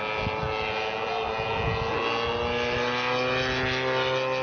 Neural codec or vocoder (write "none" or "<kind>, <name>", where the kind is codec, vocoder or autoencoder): none